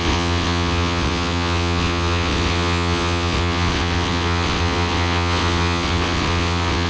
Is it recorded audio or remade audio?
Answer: remade